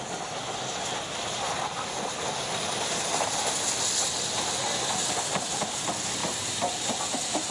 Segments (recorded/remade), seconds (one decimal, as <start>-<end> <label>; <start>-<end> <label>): 0.0-6.2 recorded; 6.2-7.0 remade; 7.0-7.5 recorded